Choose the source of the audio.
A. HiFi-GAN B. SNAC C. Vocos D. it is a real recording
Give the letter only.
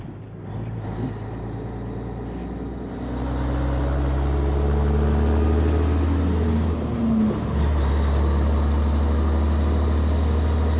D